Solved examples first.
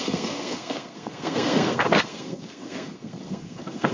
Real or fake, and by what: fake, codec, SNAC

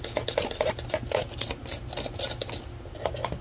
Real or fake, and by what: real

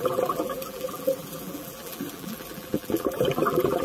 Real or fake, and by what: fake, vocoder, BigVGAN v2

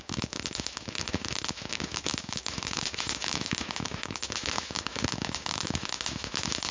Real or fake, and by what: fake, autoencoder, DAC-VAE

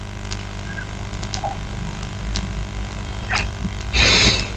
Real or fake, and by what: real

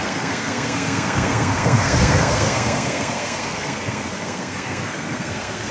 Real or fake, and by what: fake, codec, SNAC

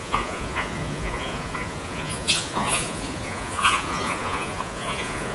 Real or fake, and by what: fake, vocoder, Vocos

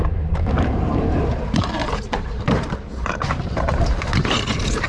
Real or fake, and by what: fake, vocoder, BigVGAN v2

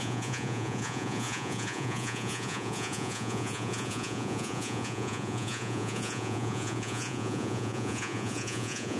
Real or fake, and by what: fake, vocoder, Vocos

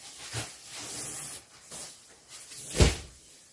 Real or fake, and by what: real